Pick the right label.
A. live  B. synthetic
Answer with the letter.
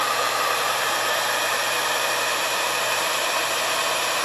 B